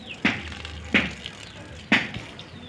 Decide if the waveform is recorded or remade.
recorded